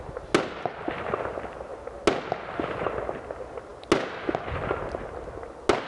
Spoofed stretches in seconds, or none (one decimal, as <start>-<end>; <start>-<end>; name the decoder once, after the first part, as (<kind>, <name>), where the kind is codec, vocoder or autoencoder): none